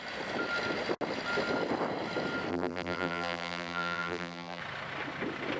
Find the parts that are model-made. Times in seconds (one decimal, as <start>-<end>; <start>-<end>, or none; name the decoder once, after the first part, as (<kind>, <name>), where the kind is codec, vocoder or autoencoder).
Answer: 2.5-4.6 (vocoder, BigVGAN v2)